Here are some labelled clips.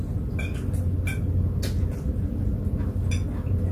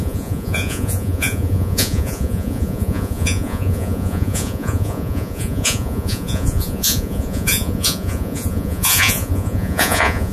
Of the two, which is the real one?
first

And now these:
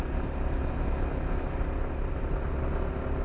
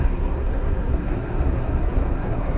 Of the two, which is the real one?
first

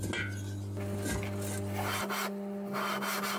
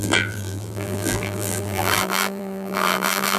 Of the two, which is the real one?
first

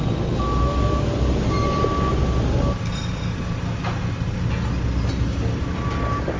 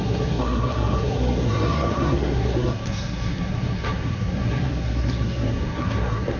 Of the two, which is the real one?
first